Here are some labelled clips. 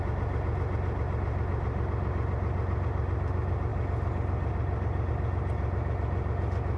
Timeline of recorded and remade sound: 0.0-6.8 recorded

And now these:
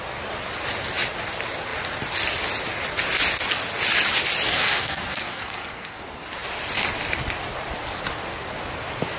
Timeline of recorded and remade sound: 0.0-4.5 recorded; 4.5-6.0 remade; 6.0-9.2 recorded

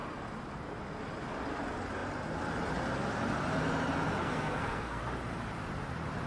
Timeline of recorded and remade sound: 0.0-4.2 recorded; 4.2-5.0 remade; 5.0-6.3 recorded

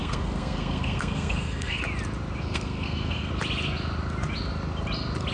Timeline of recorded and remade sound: 0.0-1.8 remade; 1.8-2.4 recorded; 2.4-3.3 remade; 3.3-5.3 recorded

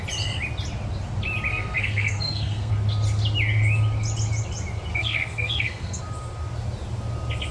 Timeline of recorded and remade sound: 0.0-1.5 recorded; 1.5-2.7 remade; 2.7-4.9 recorded; 4.9-6.0 remade; 6.0-7.5 recorded

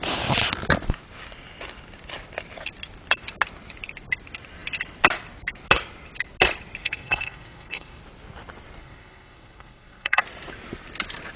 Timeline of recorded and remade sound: 0.0-6.8 recorded; 6.8-8.0 remade; 8.0-8.8 recorded; 8.8-10.2 remade; 10.2-11.4 recorded

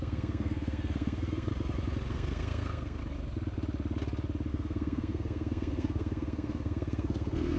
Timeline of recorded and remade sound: 0.0-1.5 remade; 1.5-2.1 recorded; 2.1-3.0 remade; 3.0-4.5 recorded; 4.5-7.6 remade